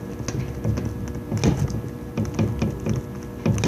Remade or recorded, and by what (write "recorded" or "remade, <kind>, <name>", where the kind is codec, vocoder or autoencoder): recorded